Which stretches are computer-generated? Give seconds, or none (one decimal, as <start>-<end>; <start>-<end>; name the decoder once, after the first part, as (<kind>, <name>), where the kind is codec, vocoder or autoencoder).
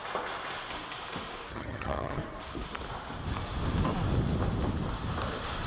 1.5-2.2 (vocoder, HiFi-GAN)